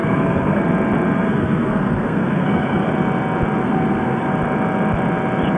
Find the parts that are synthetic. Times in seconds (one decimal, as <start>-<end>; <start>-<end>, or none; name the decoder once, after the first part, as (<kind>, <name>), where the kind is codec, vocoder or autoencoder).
0.0-0.6 (codec, SNAC); 1.2-2.9; 3.6-4.3